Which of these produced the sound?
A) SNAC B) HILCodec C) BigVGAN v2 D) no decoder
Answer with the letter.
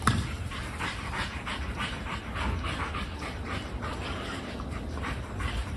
D